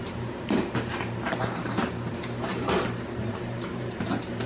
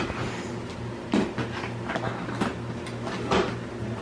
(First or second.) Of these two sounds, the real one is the second